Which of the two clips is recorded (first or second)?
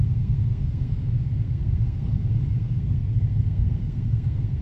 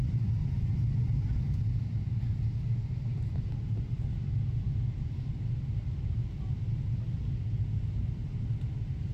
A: second